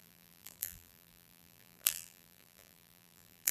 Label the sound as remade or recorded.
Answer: remade